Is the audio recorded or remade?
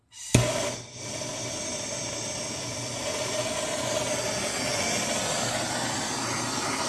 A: recorded